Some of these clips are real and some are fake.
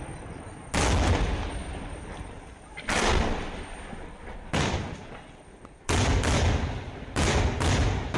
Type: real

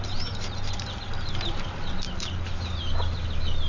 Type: real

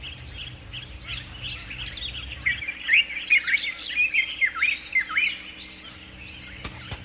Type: real